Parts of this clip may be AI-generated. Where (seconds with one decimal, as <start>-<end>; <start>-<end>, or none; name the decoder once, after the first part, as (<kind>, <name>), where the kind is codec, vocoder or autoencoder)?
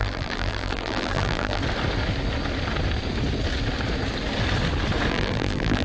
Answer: 0.0-1.6 (vocoder, BigVGAN v2); 5.1-5.8